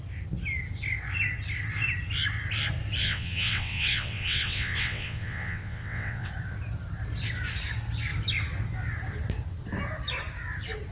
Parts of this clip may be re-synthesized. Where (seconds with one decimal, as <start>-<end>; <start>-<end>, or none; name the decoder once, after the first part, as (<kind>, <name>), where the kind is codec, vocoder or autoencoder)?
3.0-6.3 (vocoder, WaveNeXt)